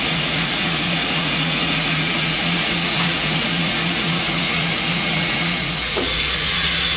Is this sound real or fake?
fake